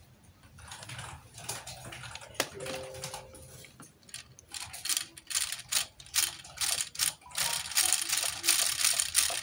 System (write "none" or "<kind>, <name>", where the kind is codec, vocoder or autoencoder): none